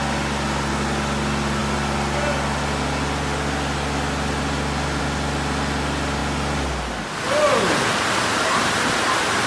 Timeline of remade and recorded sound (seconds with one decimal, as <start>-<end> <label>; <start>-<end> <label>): 0.0-9.5 recorded